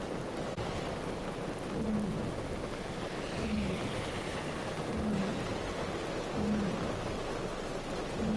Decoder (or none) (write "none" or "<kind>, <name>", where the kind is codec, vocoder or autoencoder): none